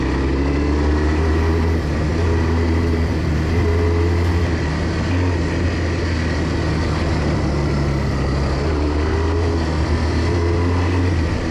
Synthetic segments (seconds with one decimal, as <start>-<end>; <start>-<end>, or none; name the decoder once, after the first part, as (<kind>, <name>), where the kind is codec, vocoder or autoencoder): 2.1-3.3 (vocoder, BigVGAN v2)